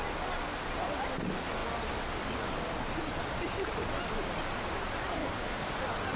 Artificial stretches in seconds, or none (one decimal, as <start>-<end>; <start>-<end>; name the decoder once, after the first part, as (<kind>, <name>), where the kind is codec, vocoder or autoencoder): 5.2-5.8 (codec, DAC)